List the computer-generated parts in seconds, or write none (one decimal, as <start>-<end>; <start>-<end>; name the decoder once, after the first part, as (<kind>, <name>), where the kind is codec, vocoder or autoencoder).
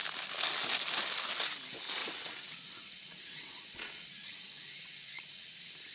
2.0-5.5 (vocoder, WaveNeXt)